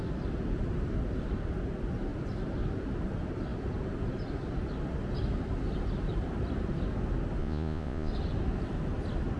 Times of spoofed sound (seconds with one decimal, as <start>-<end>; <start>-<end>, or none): 7.4-8.1